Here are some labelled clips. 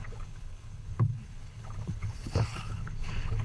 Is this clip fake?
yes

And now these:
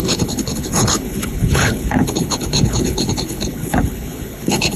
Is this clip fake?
yes